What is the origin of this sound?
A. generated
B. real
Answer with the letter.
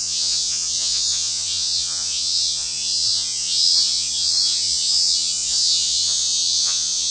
A